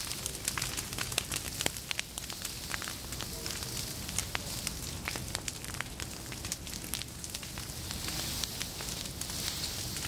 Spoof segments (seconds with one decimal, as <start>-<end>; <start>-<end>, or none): none